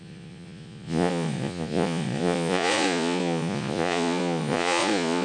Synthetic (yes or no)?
yes